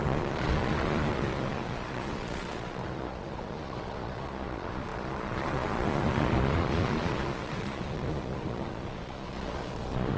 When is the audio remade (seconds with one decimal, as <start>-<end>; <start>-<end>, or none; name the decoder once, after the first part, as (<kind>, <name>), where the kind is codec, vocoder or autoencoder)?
0.0-10.2 (vocoder, Vocos)